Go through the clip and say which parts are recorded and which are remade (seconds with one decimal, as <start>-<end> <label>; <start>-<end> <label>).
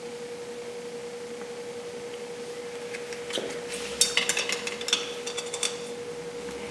0.0-6.7 recorded